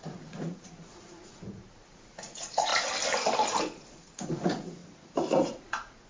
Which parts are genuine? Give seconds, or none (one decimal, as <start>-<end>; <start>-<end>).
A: 2.7-3.6; 4.8-5.4